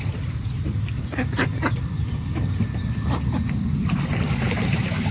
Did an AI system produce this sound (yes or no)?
no